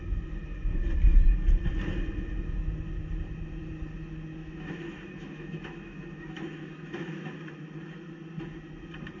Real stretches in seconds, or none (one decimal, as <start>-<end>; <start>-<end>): 0.0-4.4; 7.6-9.2